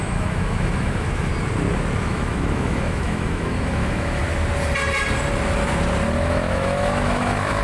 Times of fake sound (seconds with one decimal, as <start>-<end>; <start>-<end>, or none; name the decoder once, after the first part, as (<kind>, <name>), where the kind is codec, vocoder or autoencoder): 0.0-1.3 (autoencoder, DAC-VAE); 2.0-4.2; 6.2-7.6